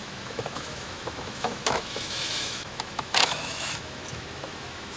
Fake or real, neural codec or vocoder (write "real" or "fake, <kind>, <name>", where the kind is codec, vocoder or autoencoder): fake, autoencoder, DAC-VAE